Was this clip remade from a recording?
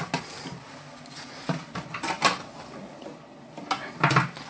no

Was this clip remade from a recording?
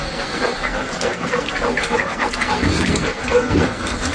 yes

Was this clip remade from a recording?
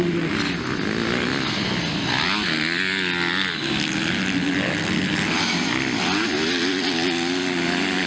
no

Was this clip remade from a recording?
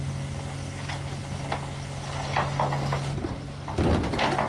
no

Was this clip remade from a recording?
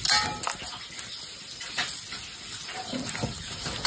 no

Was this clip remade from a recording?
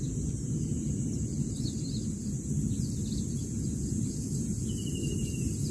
no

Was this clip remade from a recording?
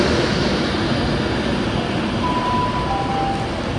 no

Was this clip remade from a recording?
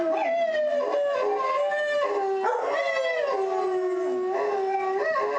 no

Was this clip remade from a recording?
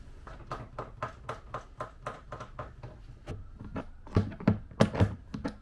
no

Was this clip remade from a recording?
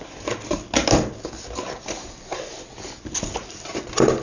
no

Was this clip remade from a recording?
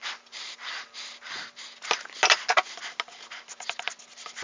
no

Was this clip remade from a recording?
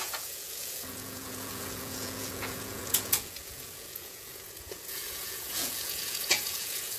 yes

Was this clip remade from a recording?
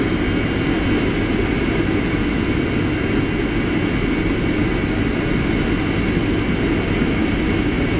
no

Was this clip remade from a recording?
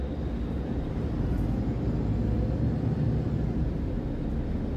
no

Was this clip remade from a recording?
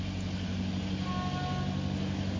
no